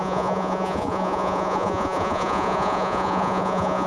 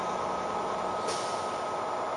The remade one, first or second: first